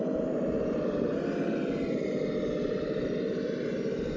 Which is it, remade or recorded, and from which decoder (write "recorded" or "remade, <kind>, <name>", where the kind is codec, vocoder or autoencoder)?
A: recorded